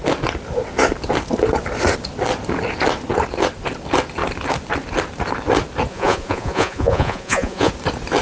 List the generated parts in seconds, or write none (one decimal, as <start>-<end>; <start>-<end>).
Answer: 5.9-7.7

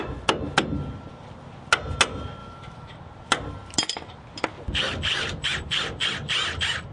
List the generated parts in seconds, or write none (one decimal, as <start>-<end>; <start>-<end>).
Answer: 2.4-2.9

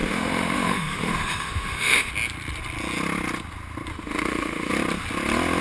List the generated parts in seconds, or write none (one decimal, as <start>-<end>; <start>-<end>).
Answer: 0.0-2.1; 3.9-4.7

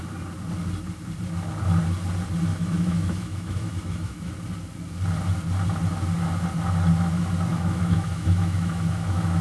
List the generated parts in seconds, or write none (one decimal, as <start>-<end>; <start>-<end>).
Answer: 2.5-4.3; 7.5-9.4